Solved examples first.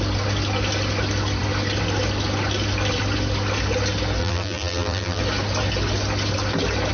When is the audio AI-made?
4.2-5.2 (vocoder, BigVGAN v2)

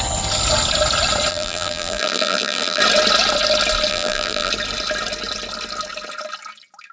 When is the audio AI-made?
1.3-2.8 (vocoder, BigVGAN v2); 3.9-4.5

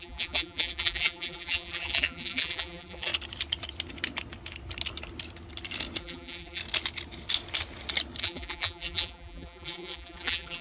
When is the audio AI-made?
0.0-3.1 (vocoder, BigVGAN v2); 6.0-6.6; 8.2-10.6

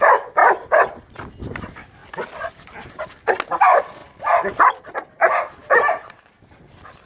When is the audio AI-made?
0.4-1.3 (vocoder, BigVGAN v2); 5.6-6.2

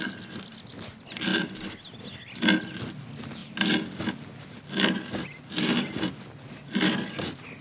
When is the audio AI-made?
none

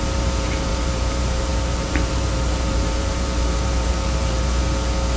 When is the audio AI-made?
0.0-4.6 (vocoder, BigVGAN v2)

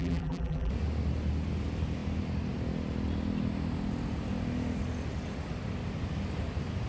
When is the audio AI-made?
0.0-0.7 (vocoder, BigVGAN v2)

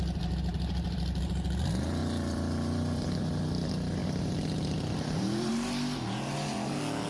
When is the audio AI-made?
0.5-1.2 (vocoder, BigVGAN v2); 2.0-3.4; 4.0-5.5